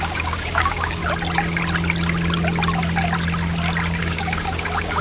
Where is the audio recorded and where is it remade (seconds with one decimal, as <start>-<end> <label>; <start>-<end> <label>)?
0.0-1.0 remade; 1.0-4.0 recorded; 4.0-5.0 remade